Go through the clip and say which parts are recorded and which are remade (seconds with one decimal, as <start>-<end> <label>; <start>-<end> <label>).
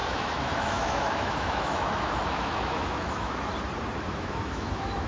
0.0-3.5 remade; 3.5-4.1 recorded; 4.1-5.1 remade